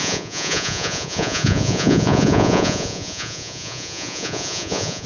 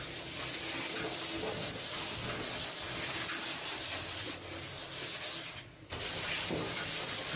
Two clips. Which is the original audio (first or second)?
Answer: second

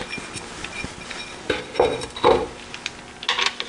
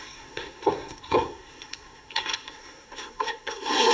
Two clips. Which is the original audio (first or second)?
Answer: first